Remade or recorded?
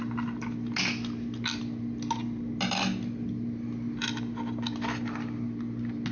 recorded